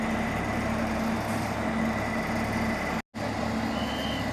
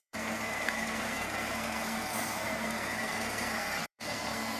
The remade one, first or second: second